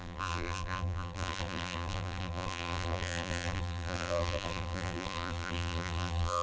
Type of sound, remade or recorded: remade